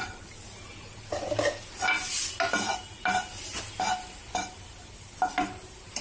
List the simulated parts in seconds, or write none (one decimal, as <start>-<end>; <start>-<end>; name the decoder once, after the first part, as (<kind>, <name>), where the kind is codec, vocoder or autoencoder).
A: none